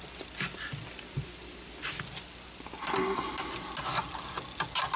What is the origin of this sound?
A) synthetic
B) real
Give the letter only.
B